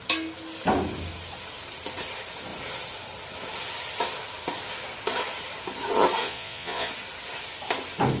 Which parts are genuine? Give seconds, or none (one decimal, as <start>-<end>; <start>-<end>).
0.0-6.2; 6.9-8.2